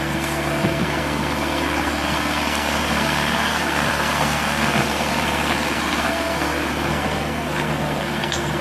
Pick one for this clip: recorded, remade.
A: remade